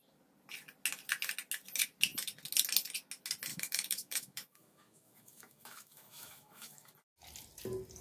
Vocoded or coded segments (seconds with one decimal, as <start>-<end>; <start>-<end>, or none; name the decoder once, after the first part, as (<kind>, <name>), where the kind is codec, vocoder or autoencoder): 3.5-6.9 (autoencoder, DAC-VAE)